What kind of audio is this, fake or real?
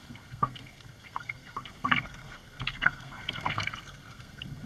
fake